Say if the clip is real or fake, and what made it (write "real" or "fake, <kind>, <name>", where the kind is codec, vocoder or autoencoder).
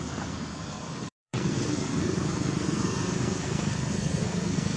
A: fake, codec, SNAC